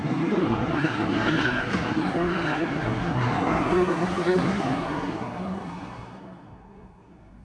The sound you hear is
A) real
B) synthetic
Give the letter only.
B